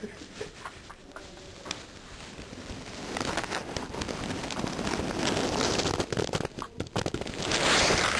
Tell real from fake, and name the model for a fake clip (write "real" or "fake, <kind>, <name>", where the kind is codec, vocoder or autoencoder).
real